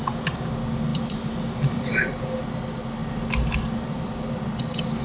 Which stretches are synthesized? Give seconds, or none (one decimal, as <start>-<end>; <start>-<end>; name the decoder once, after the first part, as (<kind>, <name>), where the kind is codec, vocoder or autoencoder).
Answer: 0.9-2.2 (vocoder, BigVGAN v2); 3.0-4.6